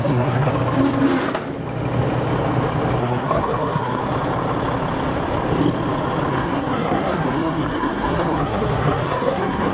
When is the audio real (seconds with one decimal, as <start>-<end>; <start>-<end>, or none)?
0.5-3.0; 4.0-6.3